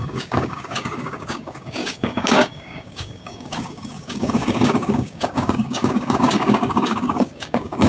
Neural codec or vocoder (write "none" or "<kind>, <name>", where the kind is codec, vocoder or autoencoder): codec, DAC